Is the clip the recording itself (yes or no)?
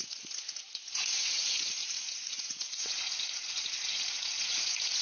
no